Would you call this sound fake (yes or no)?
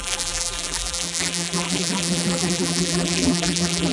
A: yes